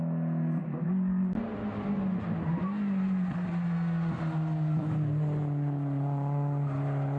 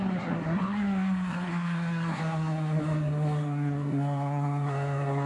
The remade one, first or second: second